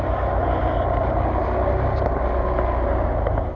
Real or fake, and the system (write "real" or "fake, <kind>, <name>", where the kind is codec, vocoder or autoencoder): real